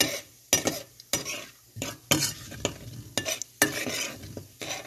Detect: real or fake real